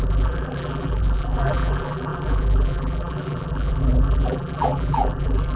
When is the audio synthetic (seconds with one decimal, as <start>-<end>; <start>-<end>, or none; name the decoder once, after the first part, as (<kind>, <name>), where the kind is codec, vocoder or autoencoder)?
0.0-5.6 (vocoder, BigVGAN v2)